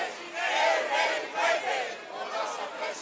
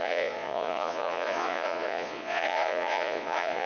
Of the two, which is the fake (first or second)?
second